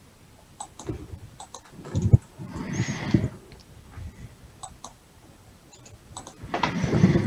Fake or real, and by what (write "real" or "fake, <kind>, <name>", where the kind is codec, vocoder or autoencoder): fake, vocoder, BigVGAN v2